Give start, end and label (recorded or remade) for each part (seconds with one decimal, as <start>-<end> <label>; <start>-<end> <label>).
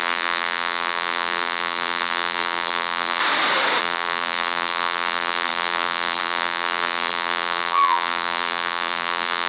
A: 0.0-3.2 remade; 3.2-3.8 recorded; 3.8-9.5 remade